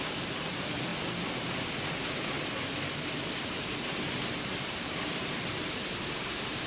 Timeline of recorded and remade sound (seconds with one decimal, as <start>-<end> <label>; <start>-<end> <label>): 0.0-0.9 remade; 0.9-4.6 recorded; 4.6-6.7 remade